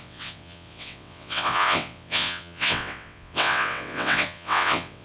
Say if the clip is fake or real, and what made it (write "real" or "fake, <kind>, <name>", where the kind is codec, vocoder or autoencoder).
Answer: fake, vocoder, WaveNeXt